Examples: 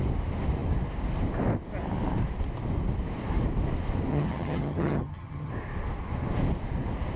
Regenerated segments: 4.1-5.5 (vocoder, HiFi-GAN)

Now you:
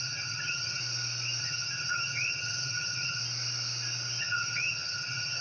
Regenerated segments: 0.0-0.8 (vocoder, HiFi-GAN); 1.4-3.2; 4.2-5.4

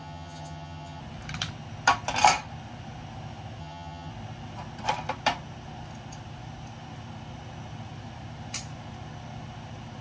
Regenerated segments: 0.0-1.0 (vocoder, HiFi-GAN); 3.6-4.1

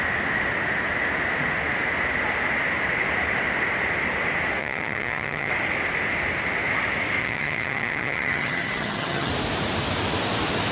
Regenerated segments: 4.6-5.5 (vocoder, HiFi-GAN); 7.2-9.3

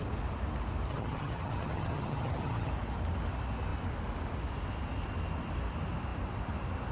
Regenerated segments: 0.9-2.7 (vocoder, HiFi-GAN)